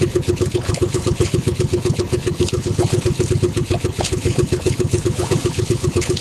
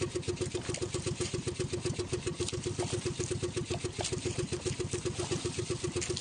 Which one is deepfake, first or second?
first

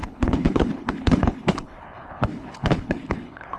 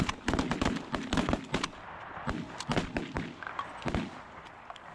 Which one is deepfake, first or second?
first